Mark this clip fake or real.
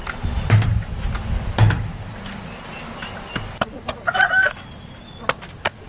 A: real